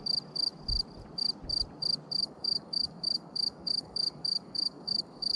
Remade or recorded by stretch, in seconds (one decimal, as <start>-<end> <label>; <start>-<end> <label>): 0.0-2.2 recorded; 2.2-5.4 remade

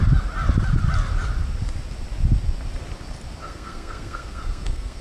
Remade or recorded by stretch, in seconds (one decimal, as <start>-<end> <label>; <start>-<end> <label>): 0.0-3.4 recorded; 3.4-5.0 remade